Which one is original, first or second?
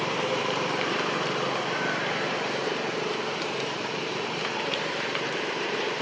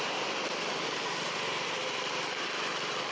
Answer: second